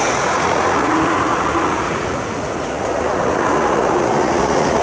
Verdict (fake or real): fake